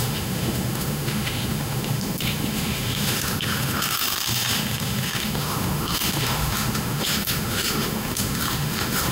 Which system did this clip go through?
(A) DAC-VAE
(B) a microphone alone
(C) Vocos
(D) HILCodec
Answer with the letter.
A